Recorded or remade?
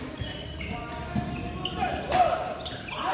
recorded